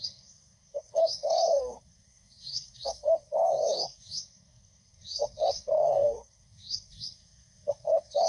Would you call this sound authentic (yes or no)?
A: no